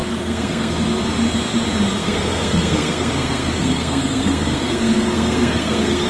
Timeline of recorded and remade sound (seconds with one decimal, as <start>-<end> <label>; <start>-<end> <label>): 0.0-0.7 remade; 0.7-2.0 recorded; 2.0-6.1 remade